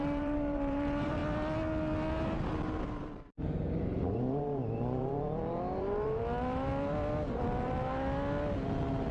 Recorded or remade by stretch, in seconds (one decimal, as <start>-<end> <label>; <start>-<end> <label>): 0.0-1.2 remade; 1.2-2.6 recorded; 2.6-6.7 remade; 6.7-9.1 recorded